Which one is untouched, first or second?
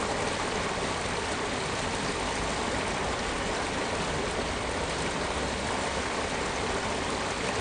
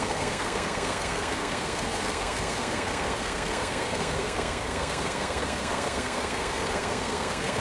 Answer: first